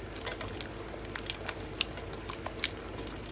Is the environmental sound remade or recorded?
recorded